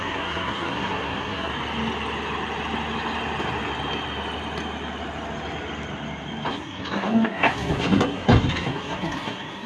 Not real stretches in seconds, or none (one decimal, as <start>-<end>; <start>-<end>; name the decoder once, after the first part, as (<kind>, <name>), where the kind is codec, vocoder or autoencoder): 0.0-1.5 (codec, SNAC); 6.5-9.7